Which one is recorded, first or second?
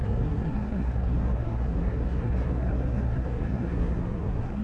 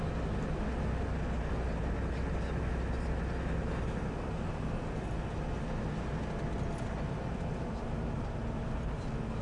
second